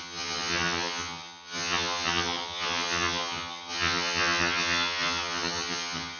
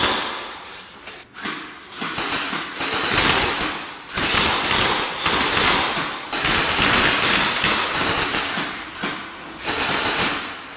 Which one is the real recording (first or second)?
second